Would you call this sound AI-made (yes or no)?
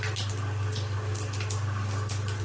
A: no